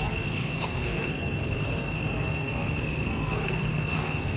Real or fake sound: fake